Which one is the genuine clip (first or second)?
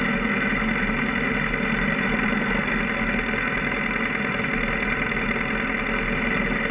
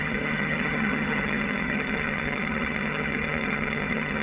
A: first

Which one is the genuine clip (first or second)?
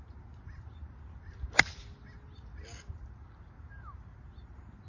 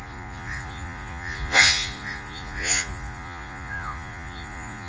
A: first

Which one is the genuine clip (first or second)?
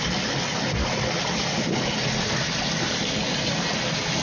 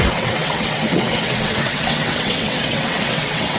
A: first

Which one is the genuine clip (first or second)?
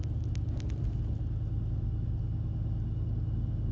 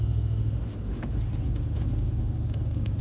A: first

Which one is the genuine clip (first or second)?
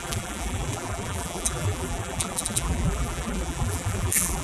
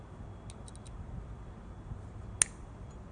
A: second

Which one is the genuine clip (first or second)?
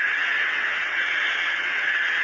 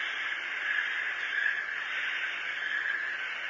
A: second